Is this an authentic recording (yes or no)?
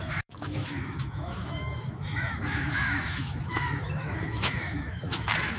no